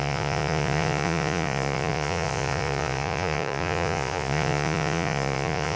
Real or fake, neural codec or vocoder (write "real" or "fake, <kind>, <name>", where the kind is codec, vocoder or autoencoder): fake, vocoder, Vocos